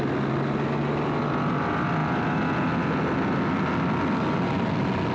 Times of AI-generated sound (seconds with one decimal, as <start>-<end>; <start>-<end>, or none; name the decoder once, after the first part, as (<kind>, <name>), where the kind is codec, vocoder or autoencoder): none